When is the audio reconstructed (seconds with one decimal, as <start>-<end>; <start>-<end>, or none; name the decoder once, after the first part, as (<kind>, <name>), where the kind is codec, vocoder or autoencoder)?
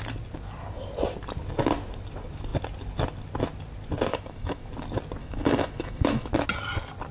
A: 4.1-4.7 (autoencoder, DAC-VAE); 5.2-6.3